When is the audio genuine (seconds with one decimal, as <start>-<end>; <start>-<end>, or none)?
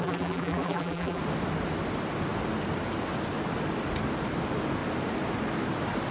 1.2-6.1